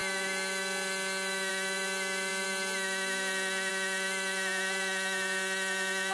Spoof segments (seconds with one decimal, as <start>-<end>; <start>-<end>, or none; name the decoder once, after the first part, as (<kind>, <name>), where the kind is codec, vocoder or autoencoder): none